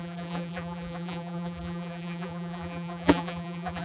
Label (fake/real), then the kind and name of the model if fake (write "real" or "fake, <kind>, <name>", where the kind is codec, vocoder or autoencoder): fake, vocoder, BigVGAN v2